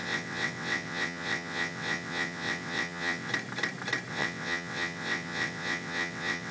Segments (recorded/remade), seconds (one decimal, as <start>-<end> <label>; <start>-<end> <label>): 0.0-3.3 remade; 3.3-4.1 recorded; 4.1-6.5 remade

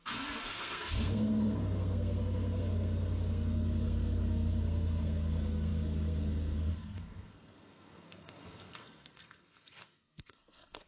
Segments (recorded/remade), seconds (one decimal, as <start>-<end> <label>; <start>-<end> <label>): 0.0-10.9 remade